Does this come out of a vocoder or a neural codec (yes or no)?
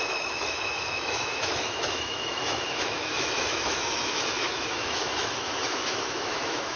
yes